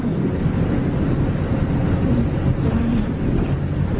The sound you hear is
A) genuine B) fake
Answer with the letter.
A